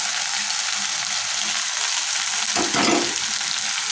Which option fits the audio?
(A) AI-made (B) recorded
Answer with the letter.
B